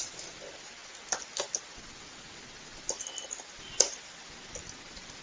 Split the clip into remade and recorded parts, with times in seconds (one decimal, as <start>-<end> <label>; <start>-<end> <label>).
0.0-5.2 recorded